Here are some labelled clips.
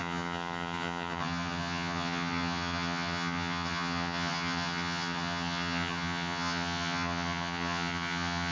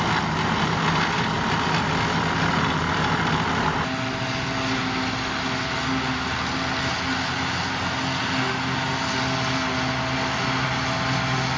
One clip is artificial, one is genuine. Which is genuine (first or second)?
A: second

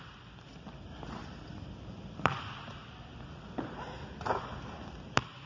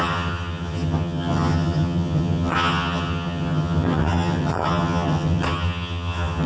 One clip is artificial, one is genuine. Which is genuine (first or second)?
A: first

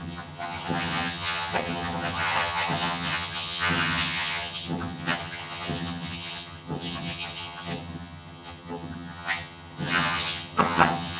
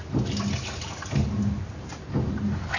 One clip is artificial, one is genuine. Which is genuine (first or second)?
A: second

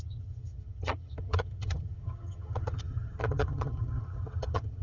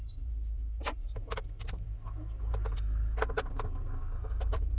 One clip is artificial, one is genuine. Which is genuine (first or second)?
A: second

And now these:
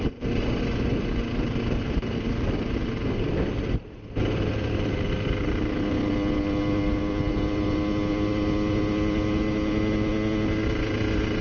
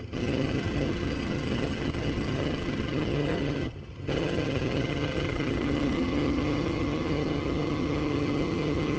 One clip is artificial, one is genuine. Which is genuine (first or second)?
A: first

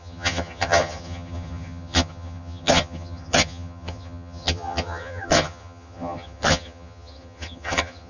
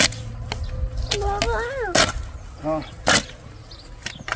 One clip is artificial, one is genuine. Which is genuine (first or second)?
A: second